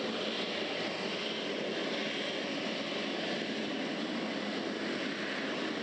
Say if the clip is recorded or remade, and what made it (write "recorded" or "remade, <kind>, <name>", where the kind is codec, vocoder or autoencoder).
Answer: recorded